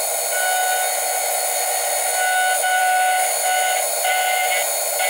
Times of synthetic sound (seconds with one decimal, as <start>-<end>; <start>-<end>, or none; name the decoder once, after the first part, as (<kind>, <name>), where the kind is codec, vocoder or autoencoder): none